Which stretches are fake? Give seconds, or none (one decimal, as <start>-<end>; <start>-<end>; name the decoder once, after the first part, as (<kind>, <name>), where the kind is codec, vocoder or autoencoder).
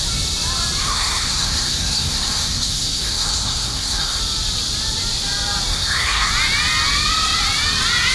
0.8-4.2 (codec, SNAC); 5.7-6.3